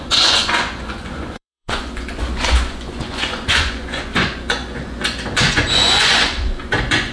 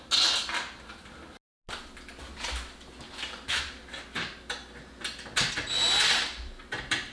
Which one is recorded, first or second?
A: second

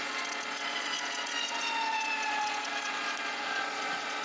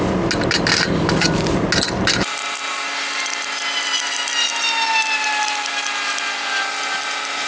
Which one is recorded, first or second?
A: second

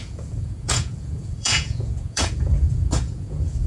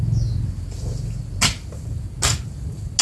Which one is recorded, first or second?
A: second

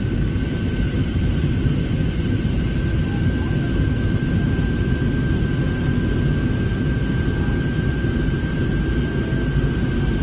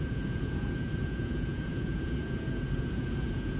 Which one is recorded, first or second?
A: first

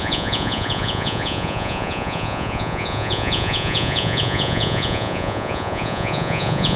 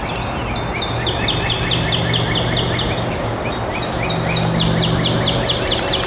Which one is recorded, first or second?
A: second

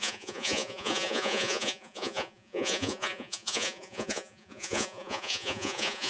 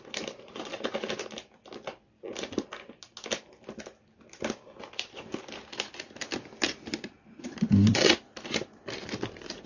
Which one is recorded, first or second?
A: second